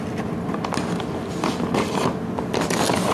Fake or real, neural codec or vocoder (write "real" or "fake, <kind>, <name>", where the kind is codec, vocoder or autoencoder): real